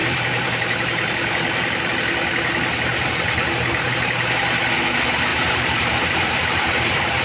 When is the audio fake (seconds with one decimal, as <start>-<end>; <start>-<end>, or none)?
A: 0.0-1.8; 5.3-7.2